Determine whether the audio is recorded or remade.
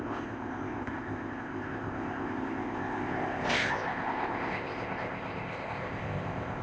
remade